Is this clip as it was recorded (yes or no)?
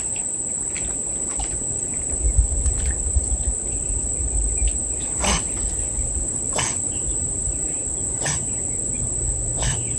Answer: yes